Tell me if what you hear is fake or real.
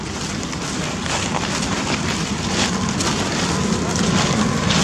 real